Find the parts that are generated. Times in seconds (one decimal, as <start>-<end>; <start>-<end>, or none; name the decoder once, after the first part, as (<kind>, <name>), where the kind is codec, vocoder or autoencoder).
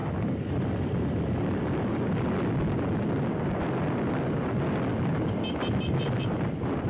none